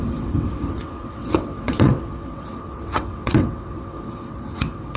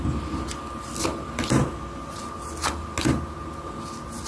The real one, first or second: second